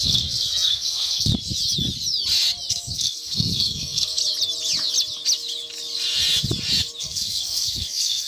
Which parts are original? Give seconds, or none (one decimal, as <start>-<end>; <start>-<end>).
1.3-2.7; 4.2-7.0